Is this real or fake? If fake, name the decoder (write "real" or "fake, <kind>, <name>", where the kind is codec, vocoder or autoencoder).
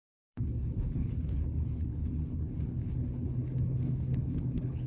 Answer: fake, codec, HILCodec